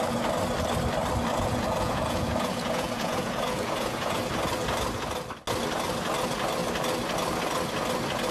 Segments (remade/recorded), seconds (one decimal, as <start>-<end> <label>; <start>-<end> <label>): 0.0-1.3 recorded; 1.3-4.2 remade; 4.2-8.3 recorded